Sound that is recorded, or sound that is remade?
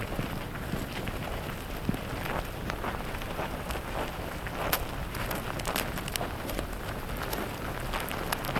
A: recorded